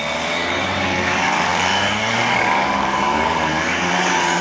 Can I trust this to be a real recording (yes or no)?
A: no